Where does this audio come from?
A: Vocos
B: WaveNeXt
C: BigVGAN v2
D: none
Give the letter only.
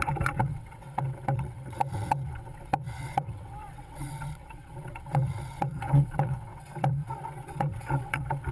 B